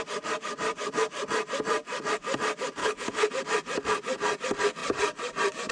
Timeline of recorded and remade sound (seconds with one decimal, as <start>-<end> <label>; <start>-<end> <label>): 0.0-2.8 recorded; 2.8-3.3 remade; 3.3-5.7 recorded